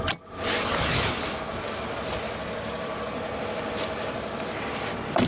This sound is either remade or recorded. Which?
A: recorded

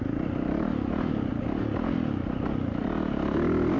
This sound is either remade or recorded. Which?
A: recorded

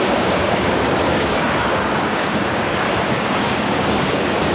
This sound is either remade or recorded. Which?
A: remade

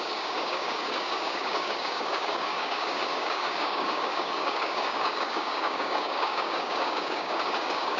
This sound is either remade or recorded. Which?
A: remade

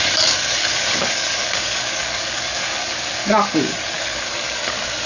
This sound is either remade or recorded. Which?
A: remade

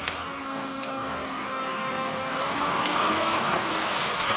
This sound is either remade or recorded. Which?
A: remade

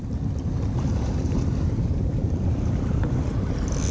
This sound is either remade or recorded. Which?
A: recorded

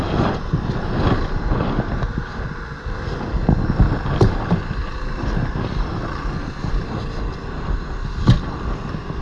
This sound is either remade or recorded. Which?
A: recorded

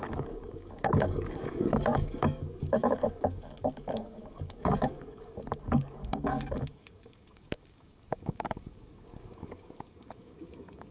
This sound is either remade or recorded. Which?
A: remade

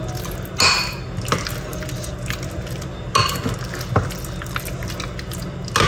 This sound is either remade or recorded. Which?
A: recorded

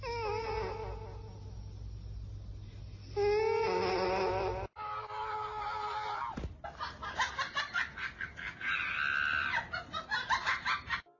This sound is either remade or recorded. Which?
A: recorded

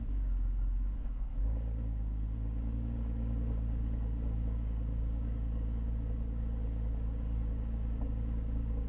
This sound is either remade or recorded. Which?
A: remade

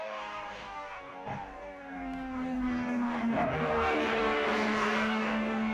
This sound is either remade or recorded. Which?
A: remade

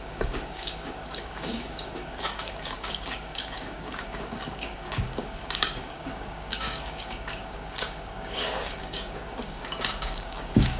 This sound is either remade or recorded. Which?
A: remade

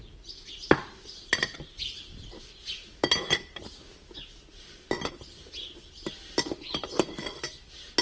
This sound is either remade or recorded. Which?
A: recorded